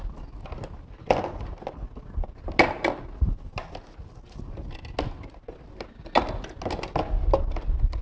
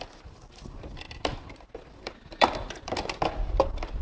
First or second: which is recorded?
first